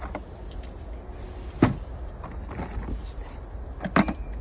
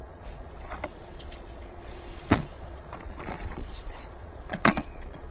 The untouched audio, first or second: first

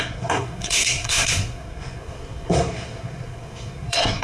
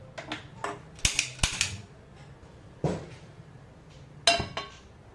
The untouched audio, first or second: second